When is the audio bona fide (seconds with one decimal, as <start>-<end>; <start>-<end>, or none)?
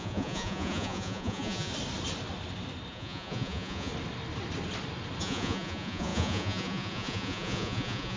1.7-2.9; 3.9-5.2